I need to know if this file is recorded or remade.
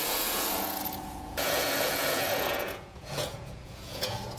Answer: remade